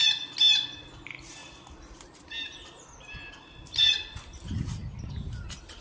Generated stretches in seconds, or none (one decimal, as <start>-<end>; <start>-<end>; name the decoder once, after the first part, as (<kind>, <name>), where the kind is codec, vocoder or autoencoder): none